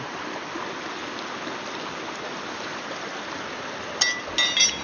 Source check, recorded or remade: recorded